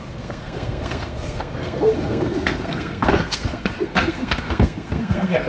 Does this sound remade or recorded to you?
remade